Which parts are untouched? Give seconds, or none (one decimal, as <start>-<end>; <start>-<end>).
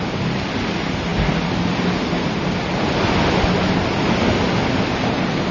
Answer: 0.0-5.5